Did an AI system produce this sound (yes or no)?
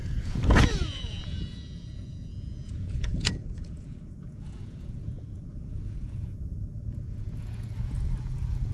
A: yes